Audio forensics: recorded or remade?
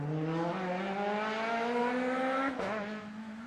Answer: recorded